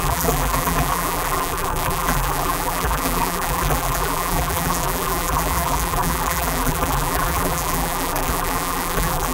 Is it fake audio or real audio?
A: fake